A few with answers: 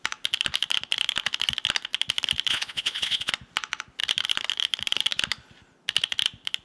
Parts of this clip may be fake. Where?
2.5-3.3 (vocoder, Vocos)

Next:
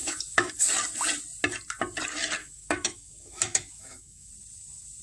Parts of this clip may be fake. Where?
0.0-0.5 (autoencoder, DAC-VAE); 2.4-4.3